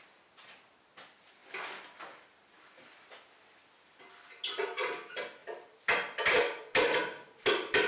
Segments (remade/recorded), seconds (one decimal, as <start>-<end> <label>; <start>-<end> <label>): 0.0-7.9 recorded